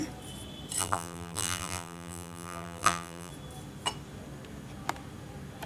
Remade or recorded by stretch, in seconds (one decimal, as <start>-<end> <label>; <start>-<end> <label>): 0.0-0.8 recorded; 0.8-3.3 remade; 3.3-5.7 recorded